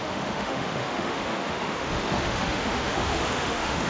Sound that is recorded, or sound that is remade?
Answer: remade